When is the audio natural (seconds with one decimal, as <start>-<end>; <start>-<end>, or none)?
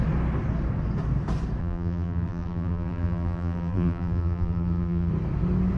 0.0-1.6; 5.1-5.8